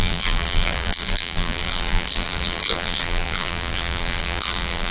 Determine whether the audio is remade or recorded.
remade